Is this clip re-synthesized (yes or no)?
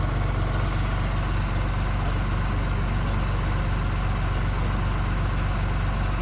no